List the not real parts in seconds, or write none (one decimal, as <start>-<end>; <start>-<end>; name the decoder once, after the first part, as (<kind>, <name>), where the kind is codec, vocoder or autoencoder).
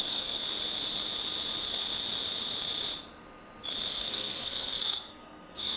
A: 0.0-0.4 (codec, SNAC); 3.9-5.8